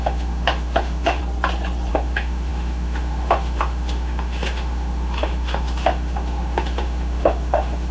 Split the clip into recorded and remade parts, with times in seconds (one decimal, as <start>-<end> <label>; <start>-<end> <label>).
0.0-1.2 remade; 1.2-1.9 recorded; 1.9-7.9 remade